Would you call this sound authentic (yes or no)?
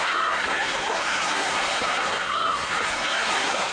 no